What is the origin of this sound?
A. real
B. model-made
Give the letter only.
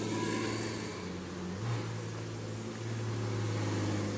A